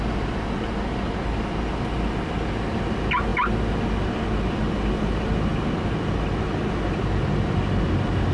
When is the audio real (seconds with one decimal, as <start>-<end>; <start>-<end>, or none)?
0.0-8.3